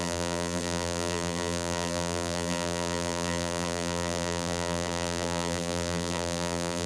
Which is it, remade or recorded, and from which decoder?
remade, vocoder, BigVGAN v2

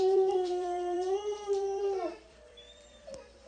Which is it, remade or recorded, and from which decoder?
remade, vocoder, BigVGAN v2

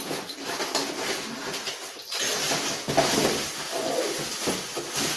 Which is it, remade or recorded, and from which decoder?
recorded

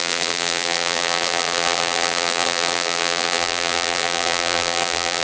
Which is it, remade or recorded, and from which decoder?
remade, vocoder, BigVGAN v2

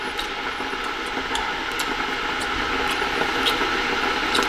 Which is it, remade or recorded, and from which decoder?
recorded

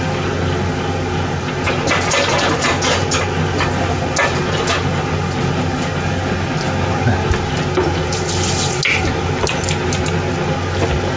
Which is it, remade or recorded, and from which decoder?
recorded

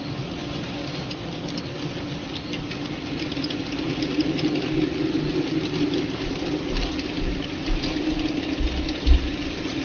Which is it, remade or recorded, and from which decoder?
recorded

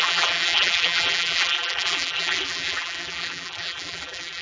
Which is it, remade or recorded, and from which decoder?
remade, vocoder, BigVGAN v2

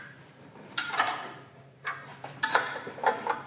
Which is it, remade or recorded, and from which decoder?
remade, vocoder, BigVGAN v2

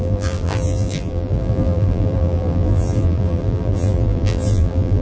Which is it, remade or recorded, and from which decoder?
remade, vocoder, BigVGAN v2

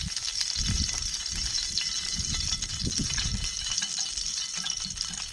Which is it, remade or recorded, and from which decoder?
remade, vocoder, BigVGAN v2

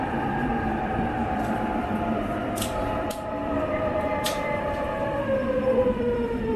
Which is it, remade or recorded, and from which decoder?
remade, vocoder, BigVGAN v2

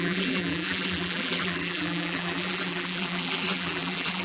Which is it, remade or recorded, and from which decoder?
remade, vocoder, BigVGAN v2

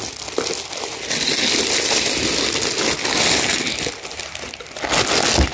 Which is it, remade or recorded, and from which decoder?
recorded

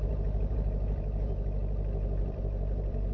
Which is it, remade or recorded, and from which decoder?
remade, vocoder, BigVGAN v2